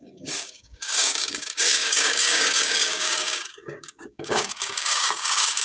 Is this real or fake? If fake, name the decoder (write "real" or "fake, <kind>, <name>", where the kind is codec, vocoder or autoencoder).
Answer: fake, codec, DAC